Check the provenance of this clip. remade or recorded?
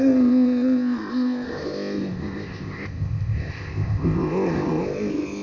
remade